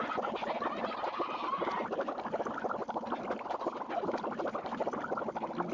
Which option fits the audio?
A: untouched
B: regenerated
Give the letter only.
A